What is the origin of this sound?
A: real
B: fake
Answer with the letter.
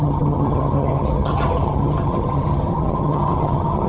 B